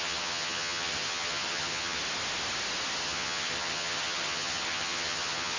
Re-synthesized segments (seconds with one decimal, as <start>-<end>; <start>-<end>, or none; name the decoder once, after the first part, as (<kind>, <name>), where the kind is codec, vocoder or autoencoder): 0.0-2.0 (vocoder, HiFi-GAN); 3.0-5.6